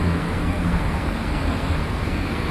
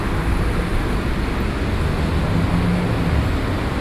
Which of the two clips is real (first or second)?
second